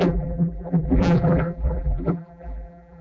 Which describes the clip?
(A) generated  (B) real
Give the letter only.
A